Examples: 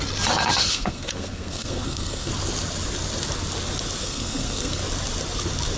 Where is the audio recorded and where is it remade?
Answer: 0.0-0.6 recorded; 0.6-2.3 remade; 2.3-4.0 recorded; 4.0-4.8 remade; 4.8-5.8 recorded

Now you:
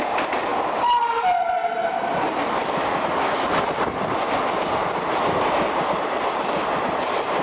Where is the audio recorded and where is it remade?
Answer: 0.0-7.4 recorded